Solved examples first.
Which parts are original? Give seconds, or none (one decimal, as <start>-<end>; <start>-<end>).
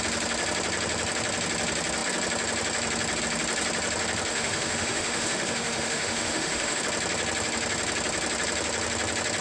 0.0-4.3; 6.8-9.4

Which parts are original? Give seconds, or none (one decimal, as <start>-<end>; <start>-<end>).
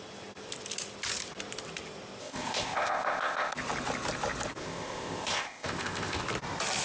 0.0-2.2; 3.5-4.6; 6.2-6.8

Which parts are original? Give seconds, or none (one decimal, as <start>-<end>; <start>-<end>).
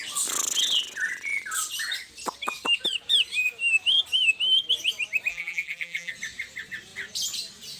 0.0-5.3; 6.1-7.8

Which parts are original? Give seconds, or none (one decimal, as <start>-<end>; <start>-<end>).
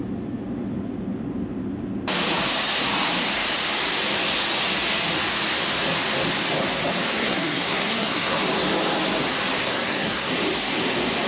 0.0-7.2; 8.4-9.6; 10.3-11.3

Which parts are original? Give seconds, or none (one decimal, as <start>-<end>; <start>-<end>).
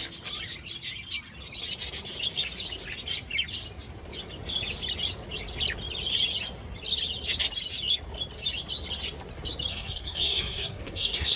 0.0-9.7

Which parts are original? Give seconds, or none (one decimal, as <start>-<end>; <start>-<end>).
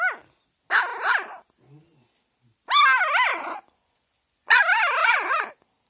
0.0-3.3; 4.6-5.0; 5.5-5.9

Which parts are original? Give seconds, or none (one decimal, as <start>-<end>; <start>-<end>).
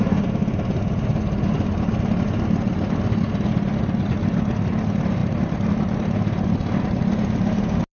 0.0-7.9